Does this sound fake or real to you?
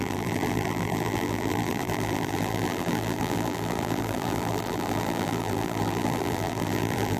fake